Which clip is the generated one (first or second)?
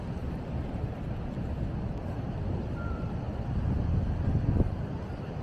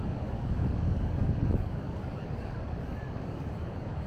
second